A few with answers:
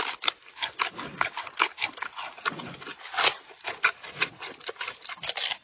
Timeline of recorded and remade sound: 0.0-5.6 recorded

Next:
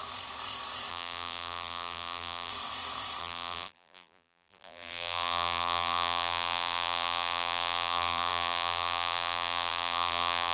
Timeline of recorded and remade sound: 0.0-0.9 recorded; 0.9-2.5 remade; 2.5-3.2 recorded; 3.2-10.5 remade

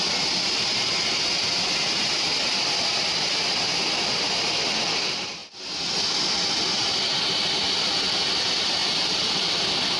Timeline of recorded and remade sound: 0.0-8.8 recorded; 8.8-10.0 remade

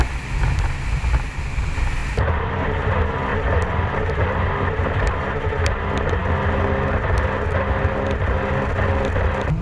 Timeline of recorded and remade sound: 0.0-2.0 recorded; 2.0-2.5 remade; 2.5-3.3 recorded; 3.3-4.9 remade; 4.9-9.6 recorded

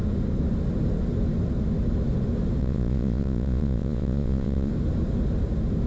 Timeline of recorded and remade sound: 0.0-2.6 recorded; 2.6-4.7 remade; 4.7-5.9 recorded

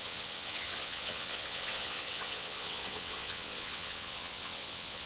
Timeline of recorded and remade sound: 0.0-5.1 remade